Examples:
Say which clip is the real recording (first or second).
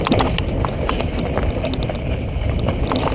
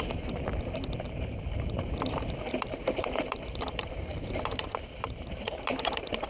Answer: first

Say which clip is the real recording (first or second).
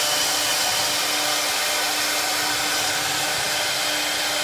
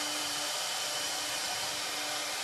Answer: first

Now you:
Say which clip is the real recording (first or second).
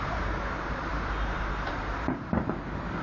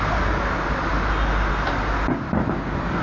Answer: second